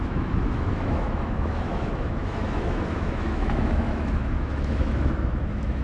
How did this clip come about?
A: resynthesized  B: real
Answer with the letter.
A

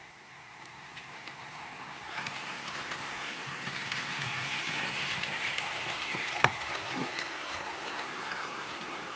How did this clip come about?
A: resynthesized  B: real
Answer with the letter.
A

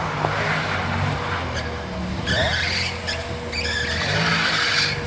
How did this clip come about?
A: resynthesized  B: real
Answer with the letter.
B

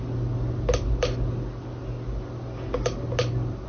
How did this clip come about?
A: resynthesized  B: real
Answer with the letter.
B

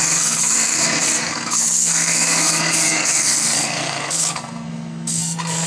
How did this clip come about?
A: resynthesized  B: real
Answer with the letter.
A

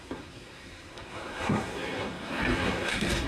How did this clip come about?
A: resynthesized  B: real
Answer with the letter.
A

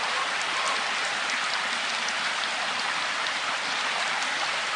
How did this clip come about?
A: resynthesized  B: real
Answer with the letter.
B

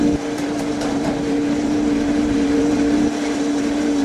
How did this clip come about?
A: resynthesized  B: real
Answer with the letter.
A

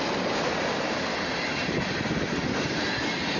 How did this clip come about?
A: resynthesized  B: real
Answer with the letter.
A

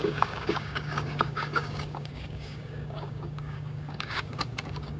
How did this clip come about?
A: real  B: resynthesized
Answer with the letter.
B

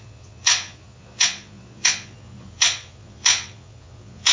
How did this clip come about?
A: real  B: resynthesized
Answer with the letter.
B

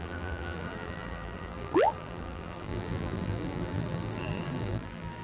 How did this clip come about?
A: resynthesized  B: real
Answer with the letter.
A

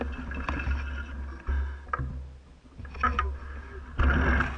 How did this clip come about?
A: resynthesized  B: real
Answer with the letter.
B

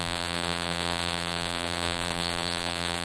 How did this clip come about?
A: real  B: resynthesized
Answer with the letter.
B